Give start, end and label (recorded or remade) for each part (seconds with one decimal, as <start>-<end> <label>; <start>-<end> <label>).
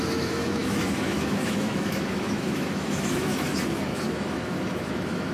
0.0-5.3 remade